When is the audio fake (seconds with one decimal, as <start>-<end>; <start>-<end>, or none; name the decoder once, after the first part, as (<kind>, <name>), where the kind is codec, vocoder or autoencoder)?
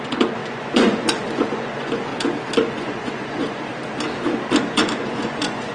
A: 0.0-2.1 (vocoder, Vocos); 2.7-3.7; 4.7-5.7